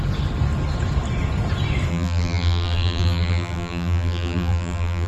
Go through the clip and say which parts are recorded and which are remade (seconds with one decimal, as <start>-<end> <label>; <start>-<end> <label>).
0.0-1.9 recorded; 1.9-5.1 remade